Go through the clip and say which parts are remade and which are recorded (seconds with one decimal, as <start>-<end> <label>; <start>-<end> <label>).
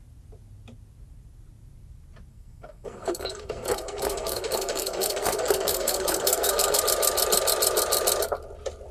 0.0-2.3 recorded; 2.3-6.8 remade; 6.8-8.9 recorded